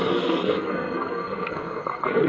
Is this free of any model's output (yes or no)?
no